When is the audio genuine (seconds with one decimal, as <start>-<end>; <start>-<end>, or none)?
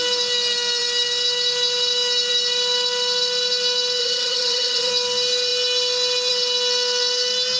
0.0-4.0; 4.9-7.6